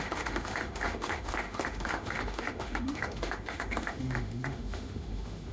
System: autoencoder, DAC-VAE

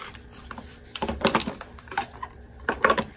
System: vocoder, BigVGAN v2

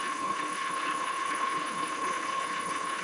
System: codec, HILCodec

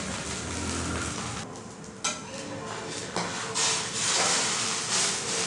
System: none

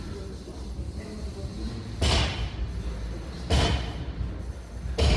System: none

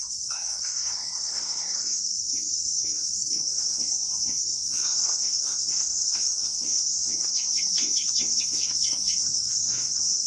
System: codec, SNAC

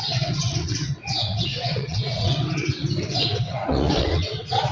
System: vocoder, WaveNeXt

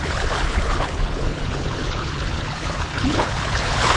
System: codec, HILCodec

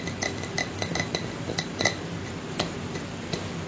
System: none